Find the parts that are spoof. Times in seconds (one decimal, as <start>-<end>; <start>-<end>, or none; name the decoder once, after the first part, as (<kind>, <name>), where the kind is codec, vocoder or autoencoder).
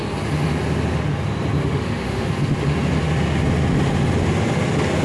1.6-2.3 (autoencoder, DAC-VAE)